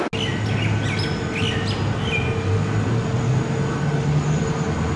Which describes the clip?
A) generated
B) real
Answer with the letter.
B